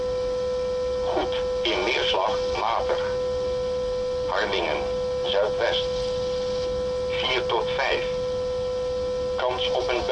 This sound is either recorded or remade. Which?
recorded